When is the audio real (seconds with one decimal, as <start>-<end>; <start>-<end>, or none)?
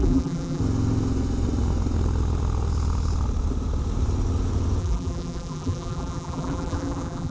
0.6-4.8